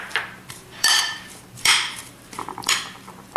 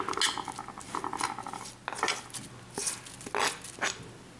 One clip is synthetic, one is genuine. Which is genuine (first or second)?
second